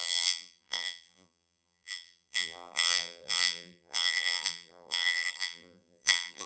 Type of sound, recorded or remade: remade